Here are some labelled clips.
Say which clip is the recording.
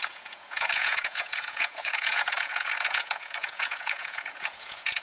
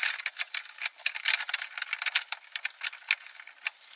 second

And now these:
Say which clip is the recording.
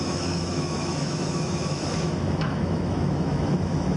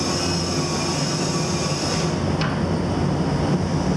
second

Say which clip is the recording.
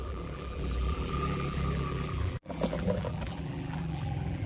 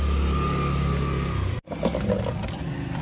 second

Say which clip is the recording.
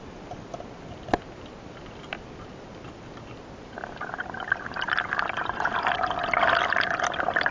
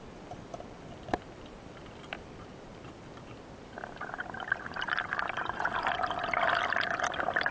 first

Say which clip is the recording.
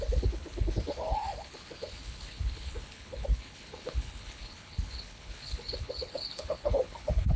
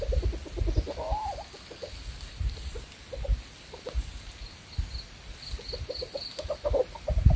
second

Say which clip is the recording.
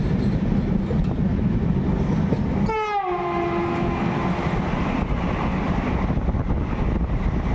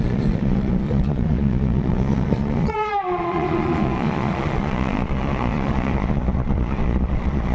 first